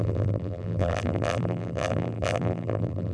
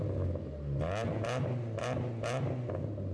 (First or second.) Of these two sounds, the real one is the second